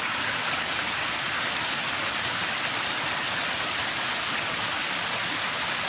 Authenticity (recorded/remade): recorded